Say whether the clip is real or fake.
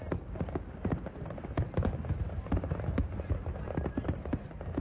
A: real